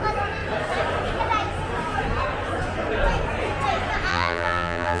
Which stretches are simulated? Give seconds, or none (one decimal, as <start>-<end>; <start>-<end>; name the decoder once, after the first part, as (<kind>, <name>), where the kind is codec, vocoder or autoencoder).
4.1-5.0 (vocoder, BigVGAN v2)